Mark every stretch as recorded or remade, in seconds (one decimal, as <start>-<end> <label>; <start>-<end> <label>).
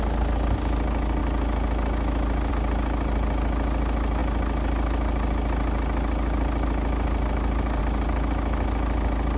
0.0-9.4 recorded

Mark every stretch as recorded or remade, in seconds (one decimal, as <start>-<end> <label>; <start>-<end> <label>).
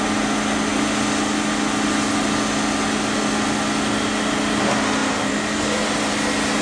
0.0-6.6 recorded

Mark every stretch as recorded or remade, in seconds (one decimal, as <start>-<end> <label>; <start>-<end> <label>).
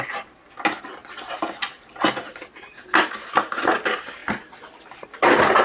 0.0-5.6 recorded